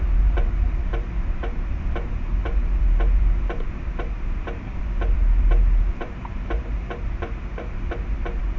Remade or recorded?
remade